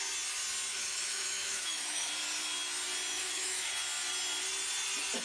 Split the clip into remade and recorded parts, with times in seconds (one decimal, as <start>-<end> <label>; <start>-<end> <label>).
0.0-0.7 recorded; 0.7-2.1 remade; 2.1-3.1 recorded; 3.1-3.7 remade; 3.7-5.2 recorded